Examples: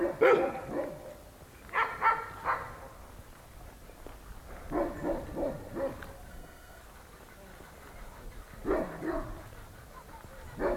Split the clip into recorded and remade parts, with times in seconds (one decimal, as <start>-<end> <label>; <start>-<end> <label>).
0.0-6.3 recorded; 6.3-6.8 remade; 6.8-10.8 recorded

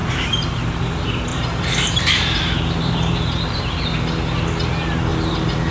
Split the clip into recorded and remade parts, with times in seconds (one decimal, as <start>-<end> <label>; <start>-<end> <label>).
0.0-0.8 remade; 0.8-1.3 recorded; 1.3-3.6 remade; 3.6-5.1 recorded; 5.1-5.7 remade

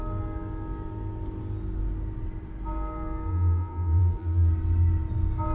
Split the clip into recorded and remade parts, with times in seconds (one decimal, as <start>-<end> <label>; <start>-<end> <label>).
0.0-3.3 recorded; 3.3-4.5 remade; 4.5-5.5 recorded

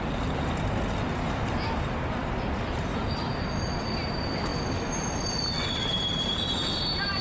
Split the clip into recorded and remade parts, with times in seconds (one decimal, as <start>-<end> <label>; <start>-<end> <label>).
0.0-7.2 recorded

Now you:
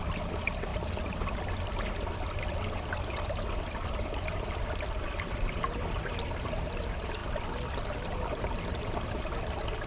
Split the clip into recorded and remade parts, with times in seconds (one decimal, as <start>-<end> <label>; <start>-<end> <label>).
0.0-9.9 recorded

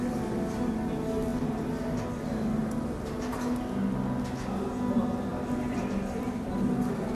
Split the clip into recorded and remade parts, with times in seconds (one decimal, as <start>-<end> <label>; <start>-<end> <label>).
0.0-5.3 recorded; 5.3-7.1 remade

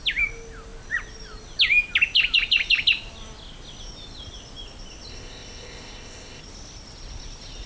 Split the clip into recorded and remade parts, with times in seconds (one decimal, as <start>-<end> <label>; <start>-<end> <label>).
0.0-5.1 recorded; 5.1-6.4 remade; 6.4-7.7 recorded